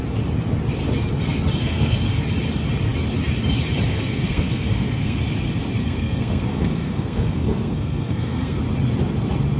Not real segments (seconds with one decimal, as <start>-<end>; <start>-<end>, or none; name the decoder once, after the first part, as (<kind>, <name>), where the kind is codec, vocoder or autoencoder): 1.6-2.1 (codec, SNAC); 3.9-5.2; 5.8-8.6